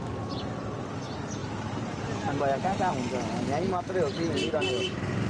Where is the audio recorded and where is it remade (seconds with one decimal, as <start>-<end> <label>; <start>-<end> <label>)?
0.0-5.3 recorded